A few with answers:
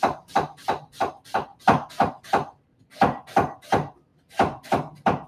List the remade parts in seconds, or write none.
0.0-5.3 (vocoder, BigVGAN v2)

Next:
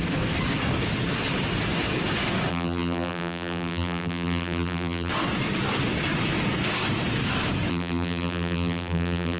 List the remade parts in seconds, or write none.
2.5-5.1 (vocoder, BigVGAN v2); 7.7-9.4

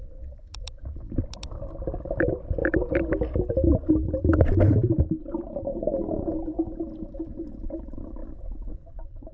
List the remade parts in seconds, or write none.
0.0-2.6 (vocoder, BigVGAN v2); 3.9-6.5; 7.6-9.3

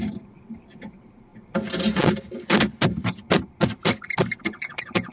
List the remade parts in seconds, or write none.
none

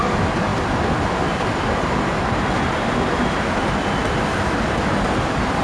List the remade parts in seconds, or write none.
none